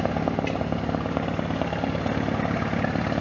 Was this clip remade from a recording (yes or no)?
no